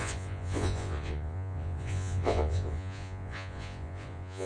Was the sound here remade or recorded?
remade